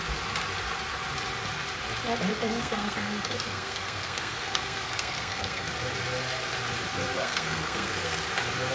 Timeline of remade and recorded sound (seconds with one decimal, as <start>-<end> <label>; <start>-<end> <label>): 0.0-2.3 recorded; 2.3-5.7 remade; 5.7-7.1 recorded; 7.1-8.2 remade; 8.2-8.7 recorded